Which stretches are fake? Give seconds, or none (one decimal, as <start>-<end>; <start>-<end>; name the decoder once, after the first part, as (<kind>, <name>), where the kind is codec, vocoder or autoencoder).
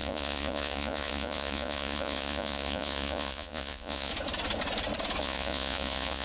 0.0-4.1 (vocoder, Vocos); 5.2-6.2